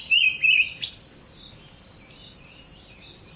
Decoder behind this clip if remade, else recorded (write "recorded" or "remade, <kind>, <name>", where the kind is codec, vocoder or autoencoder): recorded